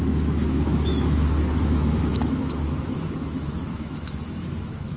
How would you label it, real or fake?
fake